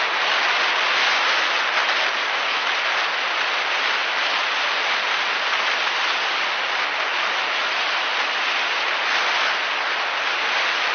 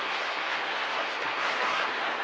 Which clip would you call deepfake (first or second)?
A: second